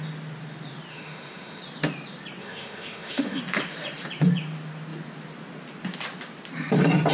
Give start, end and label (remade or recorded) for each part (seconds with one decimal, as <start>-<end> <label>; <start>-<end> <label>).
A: 0.0-0.9 recorded; 0.9-1.6 remade; 1.6-2.4 recorded; 2.4-3.4 remade; 3.4-7.1 recorded